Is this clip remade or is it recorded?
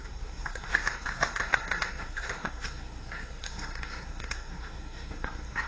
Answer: remade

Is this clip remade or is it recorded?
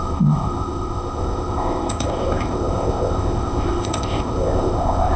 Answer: remade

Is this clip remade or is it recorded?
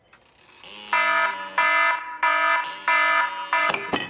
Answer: recorded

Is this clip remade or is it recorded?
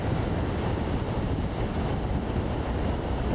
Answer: recorded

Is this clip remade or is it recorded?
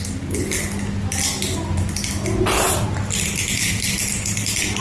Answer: recorded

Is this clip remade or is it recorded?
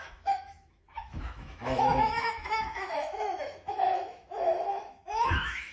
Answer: remade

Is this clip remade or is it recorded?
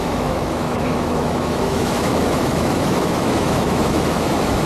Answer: remade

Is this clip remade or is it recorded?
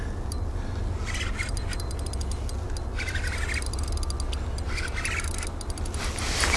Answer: recorded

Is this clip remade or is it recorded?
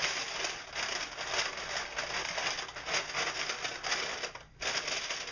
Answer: recorded